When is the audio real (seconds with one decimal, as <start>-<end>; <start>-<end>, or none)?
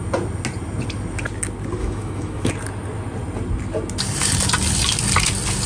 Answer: 0.0-1.8; 2.5-5.7